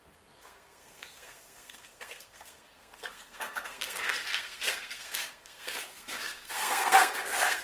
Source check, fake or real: fake